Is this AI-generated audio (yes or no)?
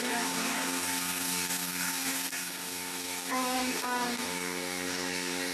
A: yes